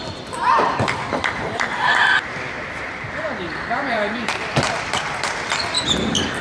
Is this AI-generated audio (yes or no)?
yes